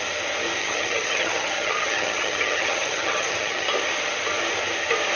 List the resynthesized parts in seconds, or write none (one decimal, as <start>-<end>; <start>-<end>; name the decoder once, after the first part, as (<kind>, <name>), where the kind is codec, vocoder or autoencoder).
0.6-3.7 (vocoder, HiFi-GAN)